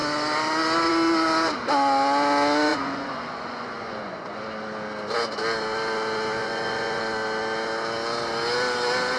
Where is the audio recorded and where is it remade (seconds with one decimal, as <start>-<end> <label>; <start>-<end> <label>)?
0.0-2.7 recorded; 2.7-4.4 remade; 4.4-6.4 recorded; 6.4-7.0 remade; 7.0-9.2 recorded